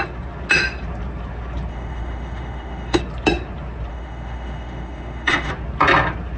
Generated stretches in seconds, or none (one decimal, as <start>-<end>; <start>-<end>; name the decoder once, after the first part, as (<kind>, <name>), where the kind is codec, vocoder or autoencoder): 1.7-3.0 (autoencoder, DAC-VAE); 3.9-5.5